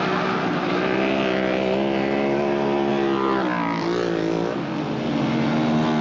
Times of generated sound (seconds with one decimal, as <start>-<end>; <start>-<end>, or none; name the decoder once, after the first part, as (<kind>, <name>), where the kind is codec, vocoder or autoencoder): none